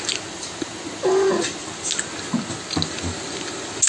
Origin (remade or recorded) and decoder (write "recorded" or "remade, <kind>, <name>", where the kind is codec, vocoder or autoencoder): recorded